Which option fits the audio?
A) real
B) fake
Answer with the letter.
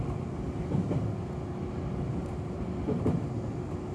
A